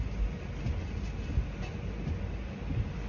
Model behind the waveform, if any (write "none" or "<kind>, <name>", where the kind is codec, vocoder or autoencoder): none